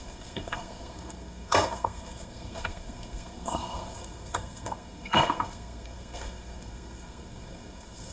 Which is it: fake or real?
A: fake